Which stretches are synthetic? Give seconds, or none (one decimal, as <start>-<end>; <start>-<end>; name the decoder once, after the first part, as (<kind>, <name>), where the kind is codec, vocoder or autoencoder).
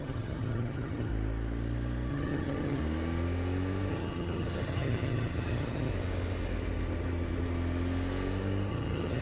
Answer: 0.0-1.1 (vocoder, HiFi-GAN); 2.1-2.8; 3.9-5.9; 8.7-9.2